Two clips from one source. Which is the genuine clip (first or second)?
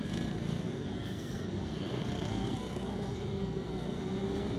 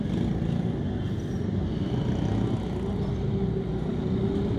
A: second